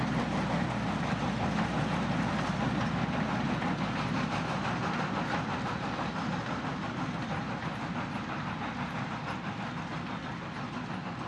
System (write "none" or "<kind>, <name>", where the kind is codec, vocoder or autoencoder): none